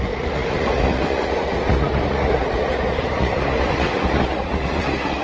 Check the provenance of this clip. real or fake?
fake